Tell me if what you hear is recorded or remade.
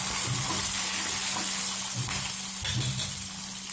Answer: recorded